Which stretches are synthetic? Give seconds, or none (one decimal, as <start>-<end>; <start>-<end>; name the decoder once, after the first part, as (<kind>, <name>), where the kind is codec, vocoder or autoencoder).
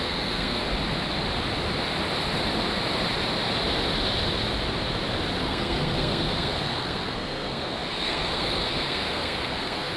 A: 0.0-0.6 (codec, SNAC); 5.4-10.0